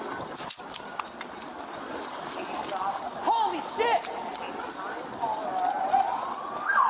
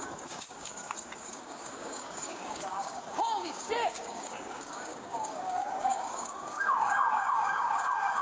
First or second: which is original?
first